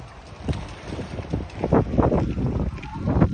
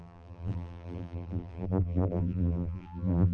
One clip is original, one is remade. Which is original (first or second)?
first